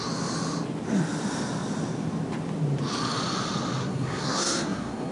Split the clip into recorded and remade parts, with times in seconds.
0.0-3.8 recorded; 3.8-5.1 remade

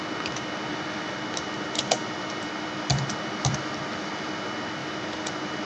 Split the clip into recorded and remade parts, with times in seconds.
0.0-0.7 recorded; 0.7-4.1 remade; 4.1-4.8 recorded; 4.8-5.3 remade; 5.3-5.7 recorded

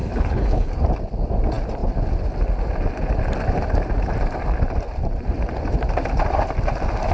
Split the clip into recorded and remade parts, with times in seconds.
0.0-0.7 remade; 0.7-7.1 recorded

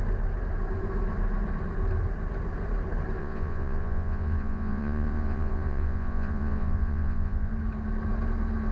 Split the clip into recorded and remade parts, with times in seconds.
0.0-3.2 recorded; 3.2-7.5 remade; 7.5-8.7 recorded

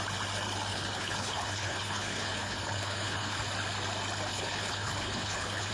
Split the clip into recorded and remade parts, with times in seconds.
0.0-0.7 recorded; 0.7-3.4 remade; 3.4-4.3 recorded; 4.3-5.7 remade